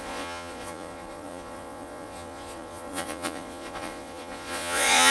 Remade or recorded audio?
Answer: remade